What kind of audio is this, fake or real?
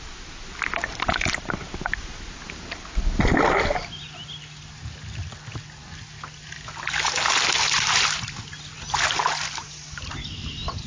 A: real